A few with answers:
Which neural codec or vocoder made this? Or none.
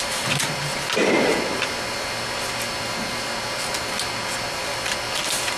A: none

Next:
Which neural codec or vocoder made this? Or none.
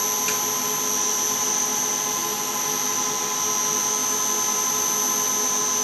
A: none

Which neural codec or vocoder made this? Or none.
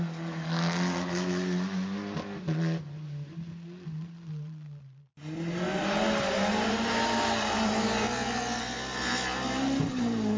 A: none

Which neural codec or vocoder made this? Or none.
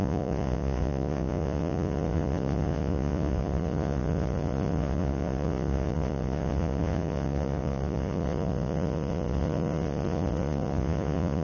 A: vocoder, Vocos